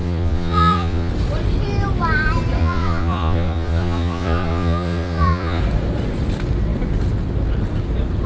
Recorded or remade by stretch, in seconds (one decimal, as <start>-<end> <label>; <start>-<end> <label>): 0.0-1.1 remade; 1.1-2.6 recorded; 2.6-5.6 remade; 5.6-8.3 recorded